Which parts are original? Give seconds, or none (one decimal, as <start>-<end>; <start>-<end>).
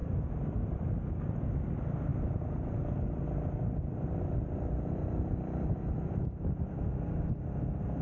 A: 1.2-2.1; 6.9-8.0